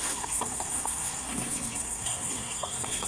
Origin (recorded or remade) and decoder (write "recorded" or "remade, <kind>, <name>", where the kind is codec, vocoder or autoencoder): remade, codec, SNAC